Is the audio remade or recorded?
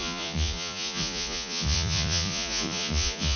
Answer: remade